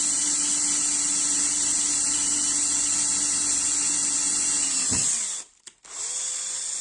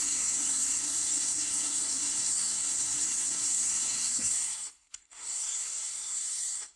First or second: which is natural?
first